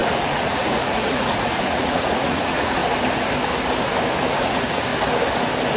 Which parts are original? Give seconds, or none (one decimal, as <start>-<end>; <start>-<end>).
2.8-4.3; 4.9-5.8